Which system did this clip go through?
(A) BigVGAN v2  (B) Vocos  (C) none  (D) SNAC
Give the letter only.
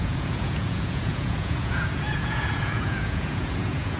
B